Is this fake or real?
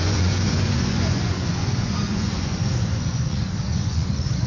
fake